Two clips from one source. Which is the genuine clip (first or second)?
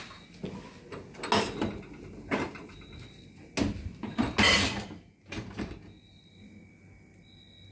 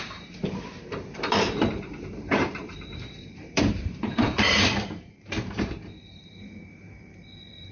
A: first